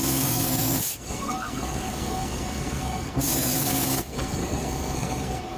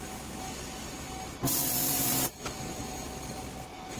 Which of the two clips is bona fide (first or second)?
second